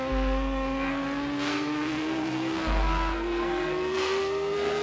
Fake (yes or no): yes